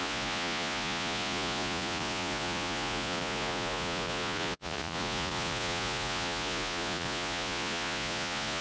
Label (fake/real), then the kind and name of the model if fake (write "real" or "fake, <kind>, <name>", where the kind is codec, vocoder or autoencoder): fake, vocoder, Vocos